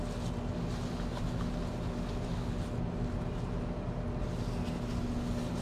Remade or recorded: recorded